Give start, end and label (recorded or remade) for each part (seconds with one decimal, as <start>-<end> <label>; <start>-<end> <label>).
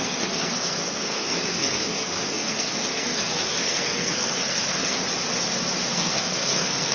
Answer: 0.0-5.0 remade; 5.0-5.9 recorded; 5.9-6.9 remade